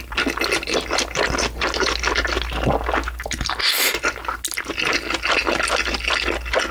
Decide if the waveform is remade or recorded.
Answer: recorded